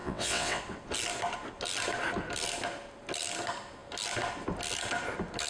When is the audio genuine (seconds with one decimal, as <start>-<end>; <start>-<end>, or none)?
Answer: 0.6-5.5